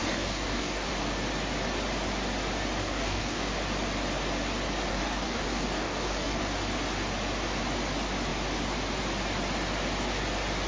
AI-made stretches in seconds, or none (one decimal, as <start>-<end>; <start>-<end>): 0.0-0.9; 2.8-3.5; 4.9-6.4